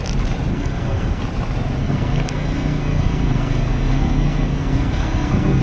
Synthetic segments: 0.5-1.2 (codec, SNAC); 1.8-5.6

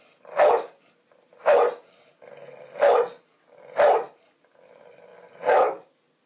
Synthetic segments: none

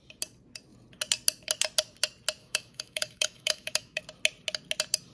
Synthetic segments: 2.4-4.0 (autoencoder, DAC-VAE)

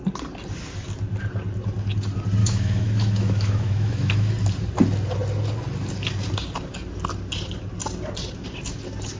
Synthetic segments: 2.4-4.3 (autoencoder, DAC-VAE)